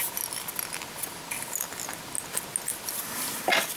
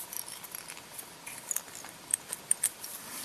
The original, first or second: first